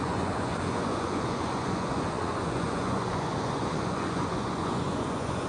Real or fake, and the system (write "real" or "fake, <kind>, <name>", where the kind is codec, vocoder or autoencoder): fake, vocoder, Vocos